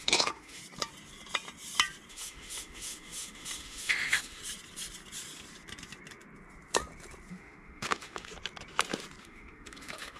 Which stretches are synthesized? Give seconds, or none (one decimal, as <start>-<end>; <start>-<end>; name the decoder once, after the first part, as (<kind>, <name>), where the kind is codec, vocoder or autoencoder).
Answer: 0.0-0.6 (autoencoder, DAC-VAE); 2.1-4.4; 7.3-8.3; 9.2-10.2